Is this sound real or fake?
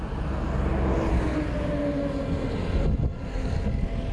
real